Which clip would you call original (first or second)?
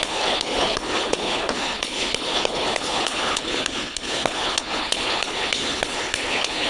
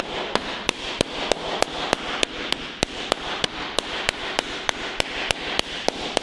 second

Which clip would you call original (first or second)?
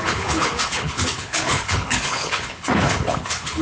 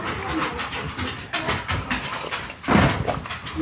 second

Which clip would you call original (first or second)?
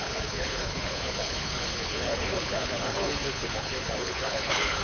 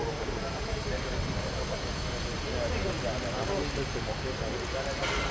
second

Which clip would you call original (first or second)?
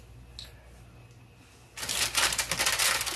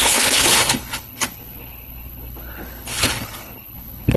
first